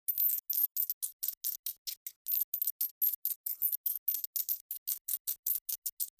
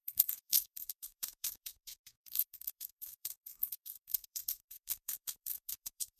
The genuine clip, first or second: first